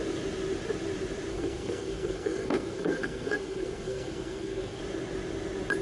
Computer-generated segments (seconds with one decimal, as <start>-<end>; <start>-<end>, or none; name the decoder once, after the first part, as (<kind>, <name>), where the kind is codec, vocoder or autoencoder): 1.3-4.8 (codec, SNAC)